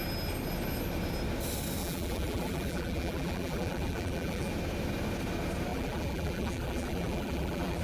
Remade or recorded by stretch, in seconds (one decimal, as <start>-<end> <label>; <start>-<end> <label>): 0.0-1.8 recorded; 1.8-4.5 remade; 4.5-5.7 recorded; 5.7-7.8 remade